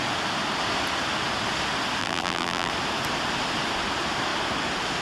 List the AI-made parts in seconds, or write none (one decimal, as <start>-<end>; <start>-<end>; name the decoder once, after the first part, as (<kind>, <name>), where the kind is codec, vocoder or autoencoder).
2.0-2.7 (vocoder, BigVGAN v2)